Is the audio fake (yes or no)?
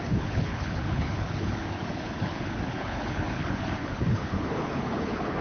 yes